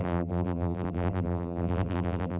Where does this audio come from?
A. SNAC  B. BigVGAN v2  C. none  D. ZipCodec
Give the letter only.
B